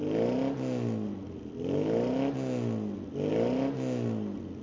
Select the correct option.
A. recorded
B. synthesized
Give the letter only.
A